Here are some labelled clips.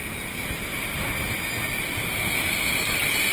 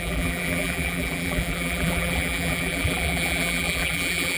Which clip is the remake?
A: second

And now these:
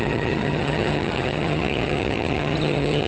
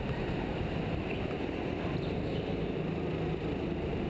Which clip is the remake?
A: first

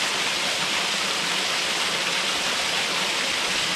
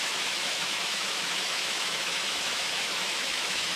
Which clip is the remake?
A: second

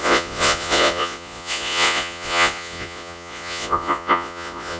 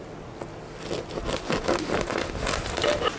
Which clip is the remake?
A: first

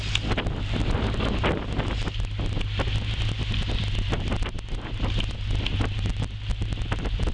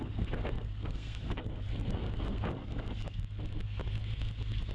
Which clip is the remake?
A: second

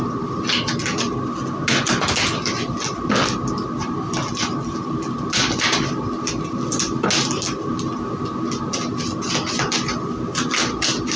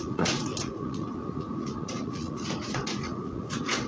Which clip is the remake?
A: second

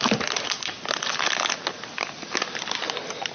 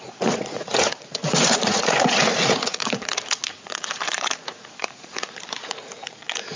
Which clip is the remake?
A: second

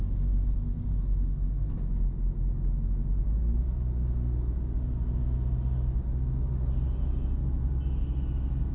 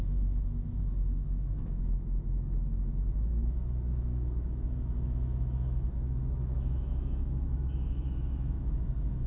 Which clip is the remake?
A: second